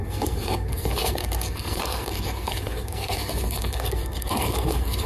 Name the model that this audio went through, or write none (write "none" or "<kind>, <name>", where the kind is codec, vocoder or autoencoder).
codec, SNAC